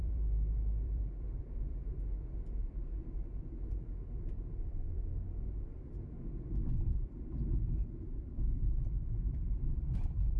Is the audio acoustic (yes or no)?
no